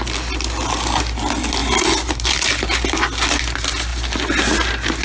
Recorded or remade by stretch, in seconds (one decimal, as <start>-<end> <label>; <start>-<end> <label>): 0.0-5.0 recorded